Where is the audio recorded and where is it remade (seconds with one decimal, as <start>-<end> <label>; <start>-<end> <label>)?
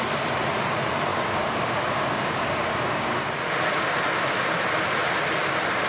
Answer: 0.0-1.1 recorded; 1.1-3.2 remade; 3.2-5.9 recorded